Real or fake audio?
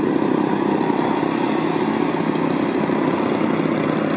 real